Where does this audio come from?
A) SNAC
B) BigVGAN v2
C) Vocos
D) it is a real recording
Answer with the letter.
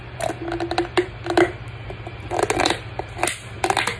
D